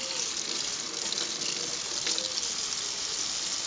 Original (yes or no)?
yes